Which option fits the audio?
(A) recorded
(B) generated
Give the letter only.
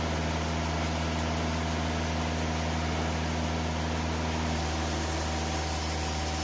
A